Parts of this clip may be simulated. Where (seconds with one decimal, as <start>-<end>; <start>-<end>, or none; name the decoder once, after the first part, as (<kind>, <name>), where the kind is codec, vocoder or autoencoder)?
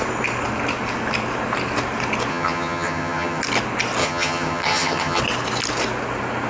2.3-3.4 (vocoder, HiFi-GAN); 4.0-5.2